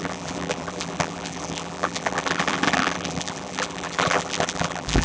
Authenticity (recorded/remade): remade